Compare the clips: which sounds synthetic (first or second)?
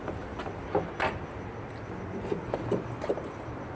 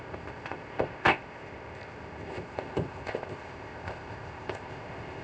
second